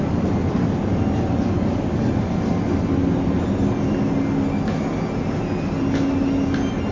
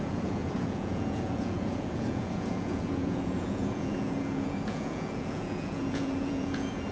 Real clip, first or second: first